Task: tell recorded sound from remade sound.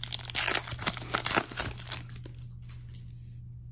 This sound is recorded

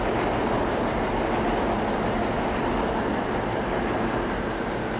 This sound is recorded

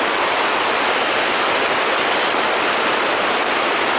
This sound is recorded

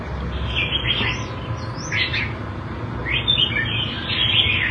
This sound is recorded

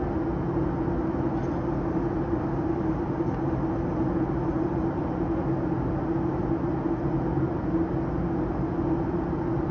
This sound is recorded